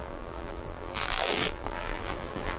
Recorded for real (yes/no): no